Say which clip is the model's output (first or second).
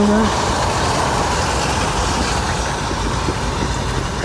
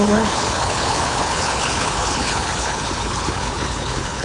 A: second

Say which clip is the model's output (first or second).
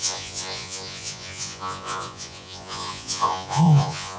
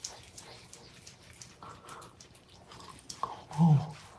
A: first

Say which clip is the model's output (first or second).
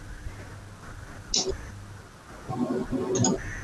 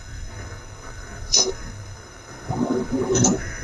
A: second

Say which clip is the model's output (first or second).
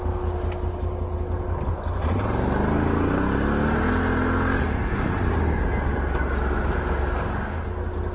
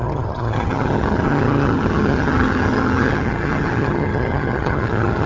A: second